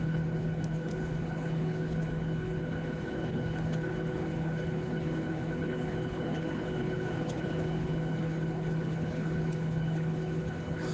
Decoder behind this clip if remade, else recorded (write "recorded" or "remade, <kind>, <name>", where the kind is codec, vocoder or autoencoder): remade, codec, HILCodec